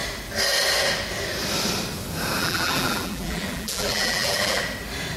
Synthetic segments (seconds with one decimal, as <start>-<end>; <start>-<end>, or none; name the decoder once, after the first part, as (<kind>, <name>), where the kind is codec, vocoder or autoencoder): 2.4-4.6 (vocoder, BigVGAN v2)